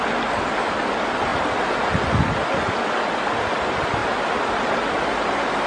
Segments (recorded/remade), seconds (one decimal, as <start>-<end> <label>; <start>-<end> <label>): 0.0-5.7 recorded

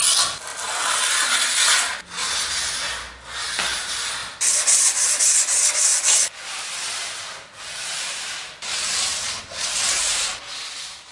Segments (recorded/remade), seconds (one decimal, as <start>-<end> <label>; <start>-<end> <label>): 0.0-4.2 recorded; 4.2-5.2 remade; 5.2-5.9 recorded; 5.9-7.6 remade; 7.6-9.1 recorded; 9.1-9.8 remade; 9.8-11.1 recorded

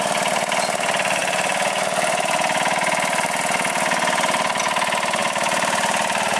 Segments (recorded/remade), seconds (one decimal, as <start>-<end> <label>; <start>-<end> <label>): 0.0-1.2 recorded; 1.2-3.4 remade; 3.4-5.2 recorded; 5.2-6.4 remade

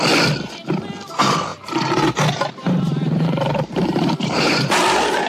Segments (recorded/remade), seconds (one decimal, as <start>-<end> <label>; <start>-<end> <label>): 0.0-1.5 recorded; 1.5-4.7 remade; 4.7-5.3 recorded

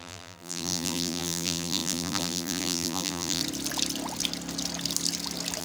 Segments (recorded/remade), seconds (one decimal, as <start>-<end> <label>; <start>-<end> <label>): 0.0-3.4 remade; 3.4-5.6 recorded

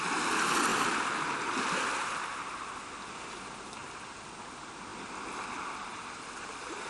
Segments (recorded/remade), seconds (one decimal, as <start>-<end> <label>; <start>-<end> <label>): 0.0-0.7 recorded; 0.7-1.8 remade; 1.8-3.8 recorded; 3.8-4.4 remade; 4.4-6.9 recorded

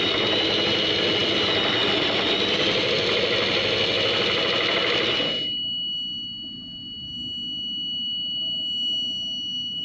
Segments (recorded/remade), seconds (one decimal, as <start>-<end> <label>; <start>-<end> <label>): 0.0-9.8 recorded

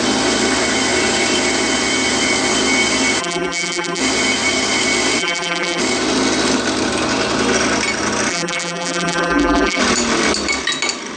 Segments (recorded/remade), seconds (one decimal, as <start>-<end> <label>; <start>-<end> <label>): 0.0-3.2 recorded; 3.2-4.0 remade; 4.0-5.2 recorded; 5.2-5.8 remade; 5.8-8.3 recorded; 8.3-9.8 remade; 9.8-11.2 recorded